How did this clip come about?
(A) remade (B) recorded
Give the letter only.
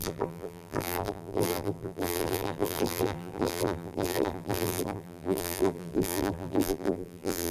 A